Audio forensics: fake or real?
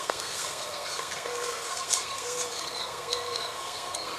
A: fake